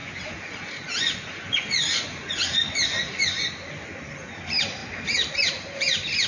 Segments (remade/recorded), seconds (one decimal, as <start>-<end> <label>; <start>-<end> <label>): 0.0-3.5 remade; 3.5-6.3 recorded